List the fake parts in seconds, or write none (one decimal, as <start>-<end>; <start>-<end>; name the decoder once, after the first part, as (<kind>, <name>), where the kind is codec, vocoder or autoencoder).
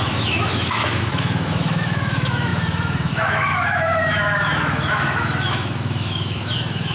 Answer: 0.0-6.9 (autoencoder, DAC-VAE)